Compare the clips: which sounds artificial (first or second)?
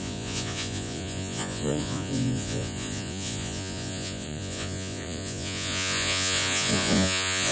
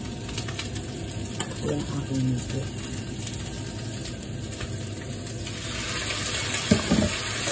first